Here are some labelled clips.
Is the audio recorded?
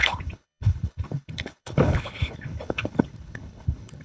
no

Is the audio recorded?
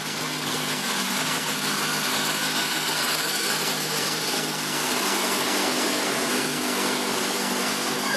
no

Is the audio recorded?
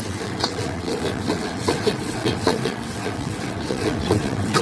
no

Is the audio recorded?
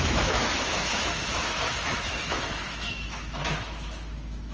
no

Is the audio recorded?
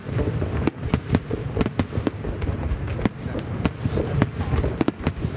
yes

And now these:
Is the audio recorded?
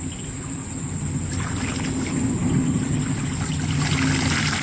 yes